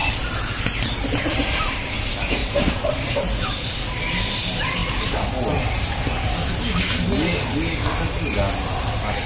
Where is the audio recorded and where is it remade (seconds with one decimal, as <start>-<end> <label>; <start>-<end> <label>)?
0.0-2.0 remade; 2.0-2.4 recorded; 2.4-3.7 remade; 3.7-9.3 recorded